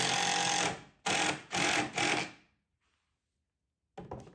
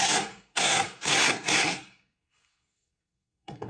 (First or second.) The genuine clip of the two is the first